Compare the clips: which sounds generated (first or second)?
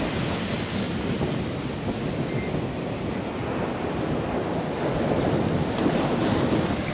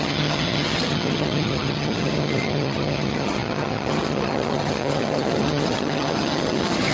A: second